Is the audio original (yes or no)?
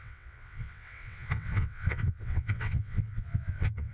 no